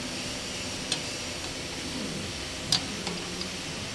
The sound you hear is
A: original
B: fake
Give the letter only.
A